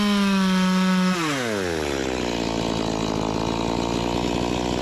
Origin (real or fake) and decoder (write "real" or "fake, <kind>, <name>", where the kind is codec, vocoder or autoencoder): real